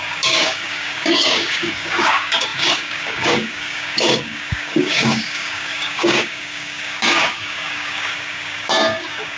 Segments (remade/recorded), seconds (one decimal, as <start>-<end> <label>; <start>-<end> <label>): 0.0-9.4 remade